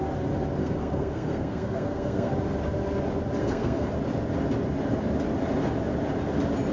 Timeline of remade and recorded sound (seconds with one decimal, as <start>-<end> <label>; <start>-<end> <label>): 0.0-0.6 recorded; 0.6-2.3 remade; 2.3-3.4 recorded; 3.4-3.9 remade; 3.9-6.7 recorded